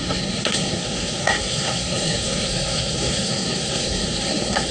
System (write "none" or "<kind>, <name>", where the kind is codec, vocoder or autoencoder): codec, SNAC